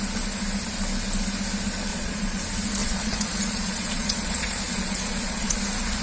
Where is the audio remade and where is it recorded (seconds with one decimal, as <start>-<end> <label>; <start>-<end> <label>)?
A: 0.0-1.9 recorded; 1.9-2.4 remade; 2.4-2.8 recorded; 2.8-5.6 remade; 5.6-6.0 recorded